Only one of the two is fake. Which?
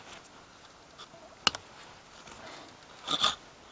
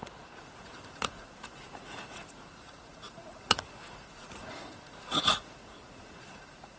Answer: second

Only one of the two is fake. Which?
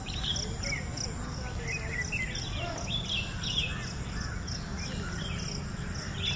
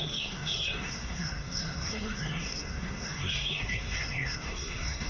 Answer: second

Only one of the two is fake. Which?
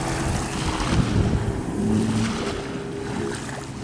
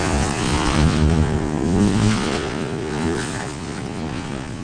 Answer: second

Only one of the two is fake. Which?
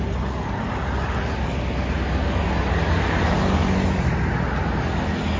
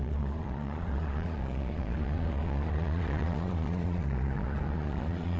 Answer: second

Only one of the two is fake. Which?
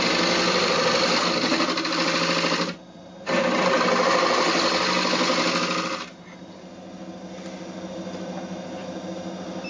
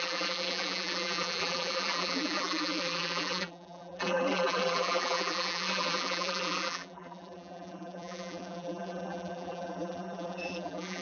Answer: second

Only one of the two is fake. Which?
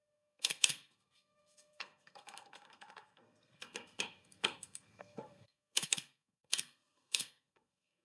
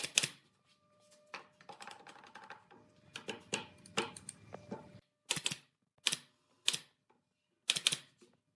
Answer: first